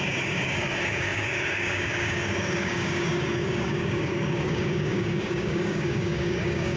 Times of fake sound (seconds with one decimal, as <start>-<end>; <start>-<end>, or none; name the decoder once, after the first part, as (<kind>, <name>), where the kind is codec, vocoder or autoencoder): 0.0-6.8 (codec, DAC)